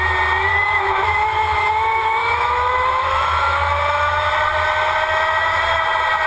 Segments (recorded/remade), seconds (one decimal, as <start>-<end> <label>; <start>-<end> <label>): 0.0-0.5 recorded; 0.5-4.3 remade; 4.3-6.3 recorded